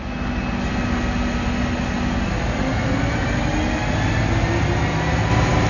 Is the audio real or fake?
real